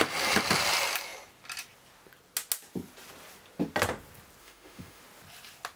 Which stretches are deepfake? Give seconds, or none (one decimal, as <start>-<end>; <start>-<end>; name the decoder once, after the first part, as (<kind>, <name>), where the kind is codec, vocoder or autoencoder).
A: 4.4-5.0 (autoencoder, DAC-VAE)